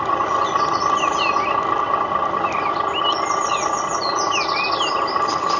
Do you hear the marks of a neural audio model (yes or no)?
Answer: no